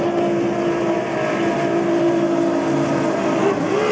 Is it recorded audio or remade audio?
recorded